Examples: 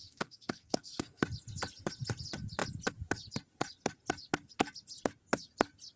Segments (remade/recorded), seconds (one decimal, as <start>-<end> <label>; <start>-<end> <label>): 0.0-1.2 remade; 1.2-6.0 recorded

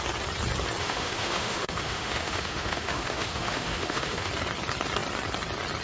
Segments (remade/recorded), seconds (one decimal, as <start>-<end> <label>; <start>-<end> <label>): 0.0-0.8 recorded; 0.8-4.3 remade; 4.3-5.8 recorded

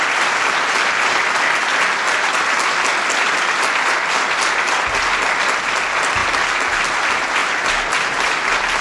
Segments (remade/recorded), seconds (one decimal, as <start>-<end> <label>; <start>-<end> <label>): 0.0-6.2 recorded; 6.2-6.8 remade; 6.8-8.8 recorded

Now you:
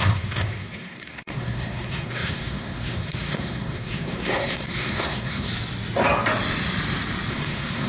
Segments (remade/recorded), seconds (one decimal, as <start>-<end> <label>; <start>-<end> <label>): 0.0-5.5 remade; 5.5-7.3 recorded; 7.3-7.9 remade

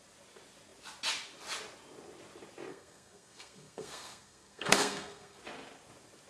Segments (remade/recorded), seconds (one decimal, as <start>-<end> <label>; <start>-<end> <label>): 0.0-2.7 recorded; 2.7-5.4 remade; 5.4-6.3 recorded

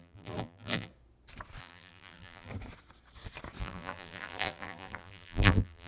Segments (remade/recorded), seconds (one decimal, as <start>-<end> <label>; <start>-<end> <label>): 0.0-0.9 remade; 0.9-1.6 recorded; 1.6-2.5 remade; 2.5-3.6 recorded; 3.6-5.9 remade

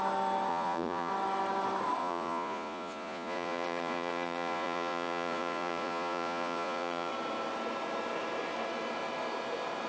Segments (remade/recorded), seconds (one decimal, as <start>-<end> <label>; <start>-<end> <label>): 0.0-0.5 recorded; 0.5-1.1 remade; 1.1-2.0 recorded; 2.0-7.1 remade; 7.1-9.9 recorded